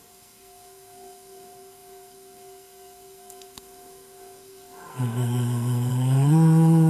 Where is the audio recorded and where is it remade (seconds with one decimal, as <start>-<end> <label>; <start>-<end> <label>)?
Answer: 0.0-6.9 remade